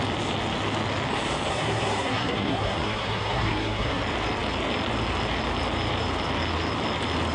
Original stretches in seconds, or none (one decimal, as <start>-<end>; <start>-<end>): 0.0-1.5; 4.0-7.3